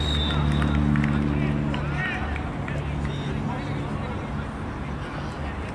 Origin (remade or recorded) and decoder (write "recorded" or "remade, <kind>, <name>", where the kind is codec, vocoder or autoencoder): recorded